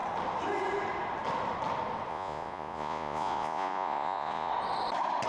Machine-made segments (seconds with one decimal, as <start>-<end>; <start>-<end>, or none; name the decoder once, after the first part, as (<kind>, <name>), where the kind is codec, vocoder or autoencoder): 2.1-4.5 (vocoder, Vocos)